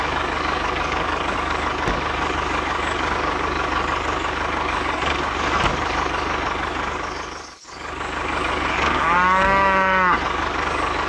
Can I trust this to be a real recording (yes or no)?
no